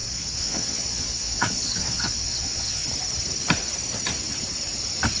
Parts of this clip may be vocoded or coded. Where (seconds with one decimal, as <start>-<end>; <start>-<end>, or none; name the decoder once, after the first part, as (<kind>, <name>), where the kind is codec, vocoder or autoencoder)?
0.0-2.8 (vocoder, Vocos)